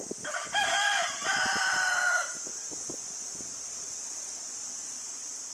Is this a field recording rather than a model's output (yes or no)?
no